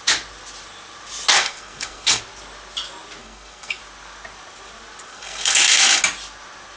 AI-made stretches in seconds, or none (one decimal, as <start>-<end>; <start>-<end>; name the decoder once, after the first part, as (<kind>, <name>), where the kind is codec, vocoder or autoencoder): 1.3-2.2 (codec, SNAC); 3.2-3.8; 5.1-6.0